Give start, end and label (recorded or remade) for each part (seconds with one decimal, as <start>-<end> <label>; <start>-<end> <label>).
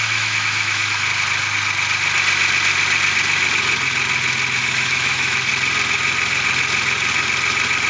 0.0-1.1 remade; 1.1-4.6 recorded; 4.6-5.5 remade; 5.5-7.9 recorded